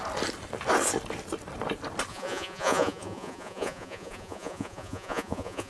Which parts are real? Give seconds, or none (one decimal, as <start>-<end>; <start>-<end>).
0.0-2.1